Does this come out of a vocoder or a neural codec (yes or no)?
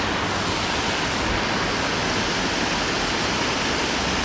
no